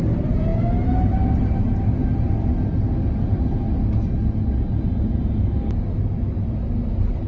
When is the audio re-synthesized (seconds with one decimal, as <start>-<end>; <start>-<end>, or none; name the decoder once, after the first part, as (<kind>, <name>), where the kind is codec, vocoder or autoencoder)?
none